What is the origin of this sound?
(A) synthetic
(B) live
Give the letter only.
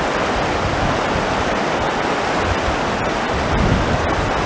B